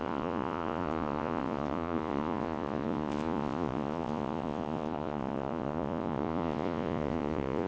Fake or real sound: fake